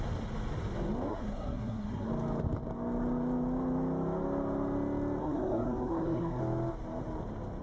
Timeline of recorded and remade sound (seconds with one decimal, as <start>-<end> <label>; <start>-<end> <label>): 0.0-1.1 recorded; 1.1-2.1 remade; 2.1-5.2 recorded; 5.2-6.4 remade; 6.4-7.6 recorded